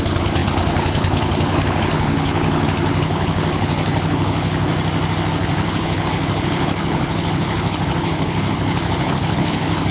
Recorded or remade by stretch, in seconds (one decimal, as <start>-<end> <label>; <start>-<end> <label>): 0.0-4.7 remade; 4.7-5.3 recorded; 5.3-9.9 remade